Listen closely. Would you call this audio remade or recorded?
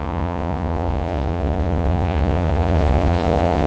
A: remade